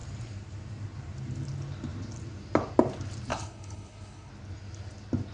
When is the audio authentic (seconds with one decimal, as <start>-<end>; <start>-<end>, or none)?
0.0-3.3; 4.3-5.3